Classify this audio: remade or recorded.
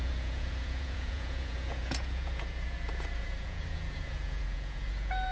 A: remade